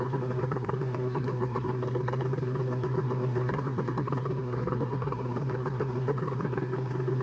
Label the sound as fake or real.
fake